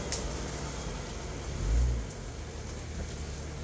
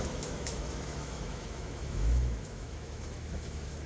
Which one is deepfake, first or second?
second